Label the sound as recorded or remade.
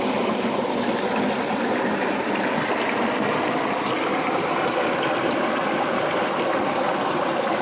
recorded